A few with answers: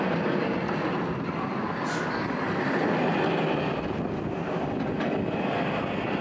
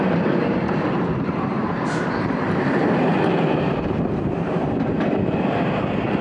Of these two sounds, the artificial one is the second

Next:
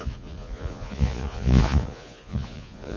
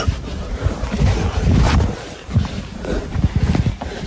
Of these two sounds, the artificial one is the first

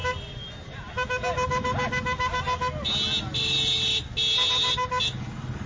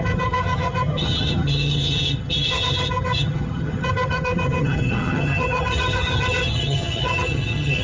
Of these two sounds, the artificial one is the second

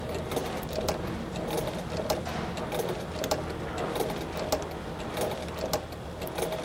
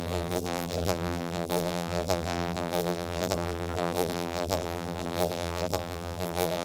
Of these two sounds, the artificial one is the second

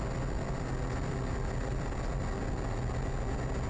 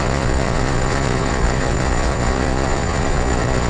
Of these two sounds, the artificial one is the second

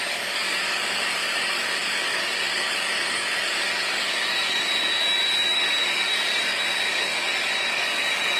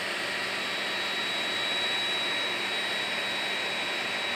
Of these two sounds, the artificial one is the first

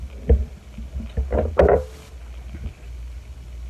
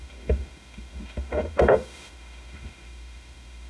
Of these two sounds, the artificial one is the second